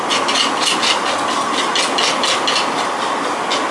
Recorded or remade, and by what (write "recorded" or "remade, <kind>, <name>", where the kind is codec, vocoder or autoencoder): recorded